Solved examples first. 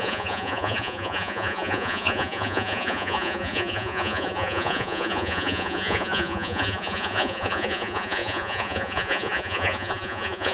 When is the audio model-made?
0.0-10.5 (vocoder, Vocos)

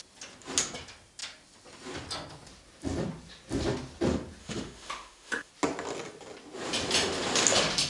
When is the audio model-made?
4.4-5.5 (autoencoder, DAC-VAE)

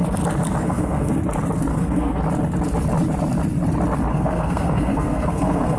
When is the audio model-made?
0.6-1.2 (codec, SNAC); 1.7-2.2; 4.1-5.8